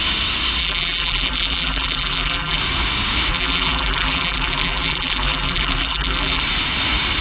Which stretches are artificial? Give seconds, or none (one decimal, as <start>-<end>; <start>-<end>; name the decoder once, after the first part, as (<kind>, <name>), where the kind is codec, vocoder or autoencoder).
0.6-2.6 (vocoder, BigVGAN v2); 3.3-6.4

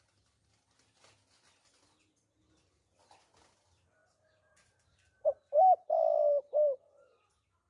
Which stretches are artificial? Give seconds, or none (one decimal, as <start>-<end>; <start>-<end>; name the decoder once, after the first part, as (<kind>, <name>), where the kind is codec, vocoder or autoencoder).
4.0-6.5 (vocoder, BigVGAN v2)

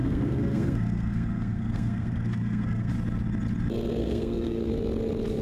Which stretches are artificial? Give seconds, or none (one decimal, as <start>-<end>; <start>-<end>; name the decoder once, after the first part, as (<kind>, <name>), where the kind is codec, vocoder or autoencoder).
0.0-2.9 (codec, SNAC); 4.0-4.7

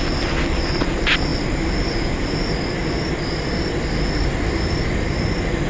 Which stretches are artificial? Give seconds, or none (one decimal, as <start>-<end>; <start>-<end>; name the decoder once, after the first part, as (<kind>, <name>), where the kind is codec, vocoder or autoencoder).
1.3-2.8 (vocoder, BigVGAN v2)

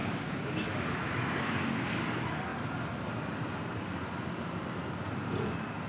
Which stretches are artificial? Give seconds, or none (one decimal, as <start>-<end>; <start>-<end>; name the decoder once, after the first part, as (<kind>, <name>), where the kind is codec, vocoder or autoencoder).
0.0-1.9 (codec, DAC)

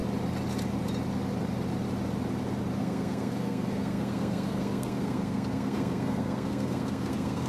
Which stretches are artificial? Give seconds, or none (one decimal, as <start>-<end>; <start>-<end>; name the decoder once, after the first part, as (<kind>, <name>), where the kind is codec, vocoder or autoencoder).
2.8-7.5 (codec, SNAC)

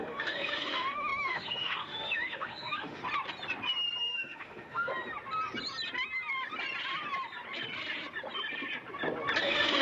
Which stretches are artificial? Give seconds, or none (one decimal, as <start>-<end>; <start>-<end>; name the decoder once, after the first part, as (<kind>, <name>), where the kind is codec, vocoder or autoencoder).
0.0-3.0 (autoencoder, DAC-VAE); 4.0-4.9; 9.4-9.8

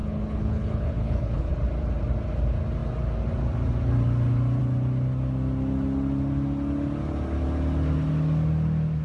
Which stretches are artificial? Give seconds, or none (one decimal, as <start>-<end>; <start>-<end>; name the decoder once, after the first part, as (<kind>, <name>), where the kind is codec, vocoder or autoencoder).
0.0-1.5 (codec, HILCodec)